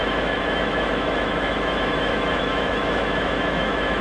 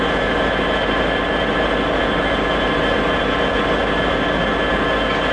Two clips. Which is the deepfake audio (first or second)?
first